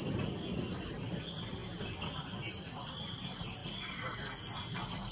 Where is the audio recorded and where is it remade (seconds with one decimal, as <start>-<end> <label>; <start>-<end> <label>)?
0.0-5.1 recorded